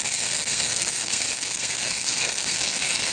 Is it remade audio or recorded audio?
remade